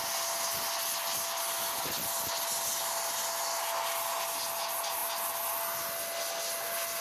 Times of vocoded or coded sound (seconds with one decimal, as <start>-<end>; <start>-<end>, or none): none